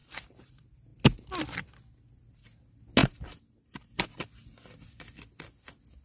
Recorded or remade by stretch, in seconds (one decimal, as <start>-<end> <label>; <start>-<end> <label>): 0.0-0.5 remade; 0.5-3.0 recorded; 3.0-3.9 remade; 3.9-6.0 recorded